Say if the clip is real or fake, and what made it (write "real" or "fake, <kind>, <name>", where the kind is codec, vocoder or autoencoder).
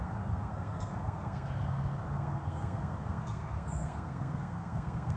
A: fake, codec, SNAC